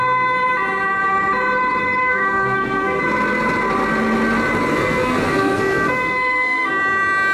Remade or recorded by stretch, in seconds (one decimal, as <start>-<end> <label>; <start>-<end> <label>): 0.0-2.0 recorded; 2.0-3.0 remade; 3.0-4.7 recorded; 4.7-6.7 remade; 6.7-7.3 recorded